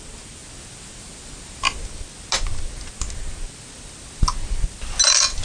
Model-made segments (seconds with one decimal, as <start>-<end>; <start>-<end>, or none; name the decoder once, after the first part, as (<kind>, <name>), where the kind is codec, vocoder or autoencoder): none